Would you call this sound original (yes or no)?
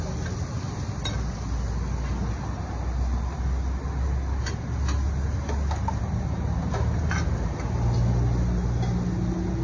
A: yes